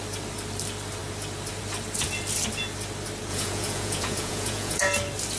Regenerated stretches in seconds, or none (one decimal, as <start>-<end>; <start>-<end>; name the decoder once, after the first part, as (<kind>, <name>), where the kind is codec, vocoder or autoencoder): 3.3-4.8 (vocoder, Vocos)